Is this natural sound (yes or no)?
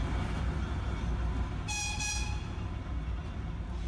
yes